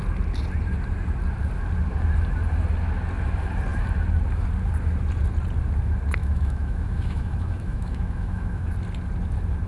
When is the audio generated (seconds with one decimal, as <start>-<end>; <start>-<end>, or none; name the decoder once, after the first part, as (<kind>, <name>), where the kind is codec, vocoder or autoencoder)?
6.2-8.7 (autoencoder, DAC-VAE)